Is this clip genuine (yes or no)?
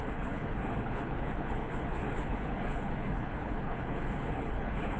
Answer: no